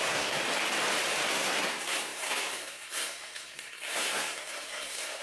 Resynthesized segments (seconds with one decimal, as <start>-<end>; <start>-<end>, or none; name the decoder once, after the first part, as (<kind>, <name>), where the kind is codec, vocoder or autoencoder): 0.0-0.4 (codec, SNAC); 1.3-5.2